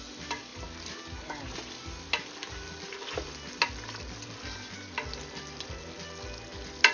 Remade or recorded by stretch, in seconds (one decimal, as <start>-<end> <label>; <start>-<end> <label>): 0.0-6.9 recorded